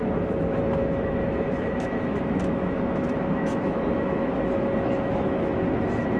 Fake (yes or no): yes